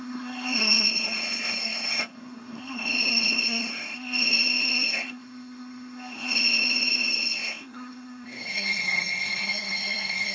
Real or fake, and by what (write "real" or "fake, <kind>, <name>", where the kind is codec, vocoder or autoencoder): fake, codec, SNAC